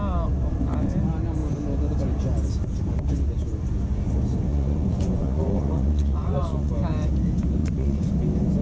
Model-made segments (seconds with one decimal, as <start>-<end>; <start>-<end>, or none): 4.5-6.7; 7.6-8.1